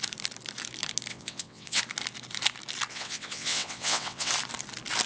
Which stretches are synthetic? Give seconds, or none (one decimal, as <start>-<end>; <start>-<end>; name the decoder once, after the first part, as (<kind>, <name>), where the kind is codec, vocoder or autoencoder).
1.1-1.8 (vocoder, WaveNeXt); 2.9-4.3